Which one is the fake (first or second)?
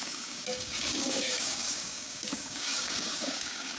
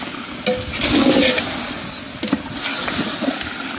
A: first